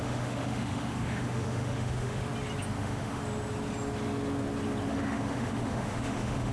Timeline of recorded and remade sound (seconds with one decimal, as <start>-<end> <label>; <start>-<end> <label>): 0.0-2.2 remade; 2.2-2.8 recorded; 2.8-3.2 remade; 3.2-4.9 recorded; 4.9-6.5 remade